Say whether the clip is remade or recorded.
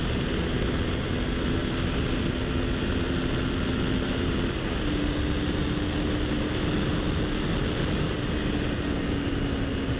recorded